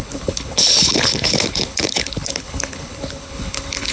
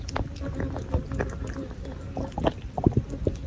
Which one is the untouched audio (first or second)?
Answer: second